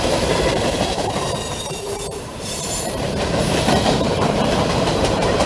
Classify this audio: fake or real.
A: fake